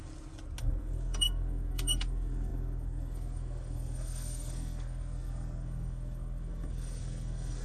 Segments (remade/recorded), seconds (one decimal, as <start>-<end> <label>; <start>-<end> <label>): 0.0-0.6 recorded; 0.6-7.6 remade